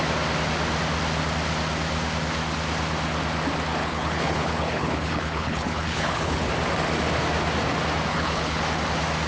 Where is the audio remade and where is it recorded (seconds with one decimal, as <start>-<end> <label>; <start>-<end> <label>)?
0.0-3.8 recorded; 3.8-6.5 remade; 6.5-8.1 recorded; 8.1-8.6 remade; 8.6-9.3 recorded